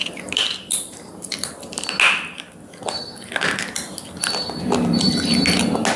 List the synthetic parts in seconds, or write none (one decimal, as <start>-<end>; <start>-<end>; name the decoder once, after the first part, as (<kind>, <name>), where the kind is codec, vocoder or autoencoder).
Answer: 0.0-1.5 (vocoder, BigVGAN v2)